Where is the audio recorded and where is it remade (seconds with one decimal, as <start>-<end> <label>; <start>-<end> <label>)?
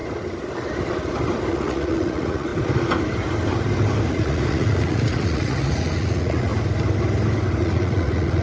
0.0-1.5 recorded; 1.5-2.5 remade; 2.5-4.1 recorded; 4.1-6.5 remade; 6.5-7.6 recorded; 7.6-8.4 remade